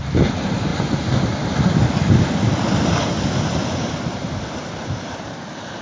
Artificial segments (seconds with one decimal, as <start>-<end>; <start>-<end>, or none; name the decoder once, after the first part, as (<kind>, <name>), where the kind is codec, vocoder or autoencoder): 0.0-0.7 (vocoder, BigVGAN v2); 3.9-5.8